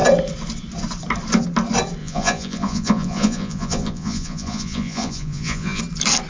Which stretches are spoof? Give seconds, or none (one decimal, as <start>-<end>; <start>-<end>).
2.0-5.8